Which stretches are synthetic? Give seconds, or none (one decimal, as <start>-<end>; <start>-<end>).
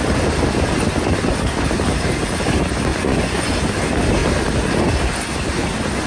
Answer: 2.9-3.5